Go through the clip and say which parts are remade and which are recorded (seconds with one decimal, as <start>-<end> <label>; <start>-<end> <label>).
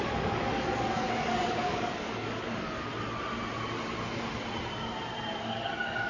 0.0-2.9 remade; 2.9-5.4 recorded; 5.4-6.1 remade